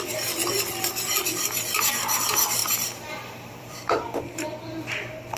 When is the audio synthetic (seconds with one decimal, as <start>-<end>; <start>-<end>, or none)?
2.6-4.2